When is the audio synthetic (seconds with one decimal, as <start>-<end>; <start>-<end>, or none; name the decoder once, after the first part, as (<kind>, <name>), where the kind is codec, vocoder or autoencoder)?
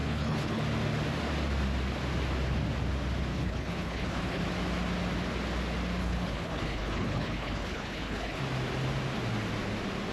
0.0-0.6 (codec, HILCodec); 3.3-4.4; 6.0-8.4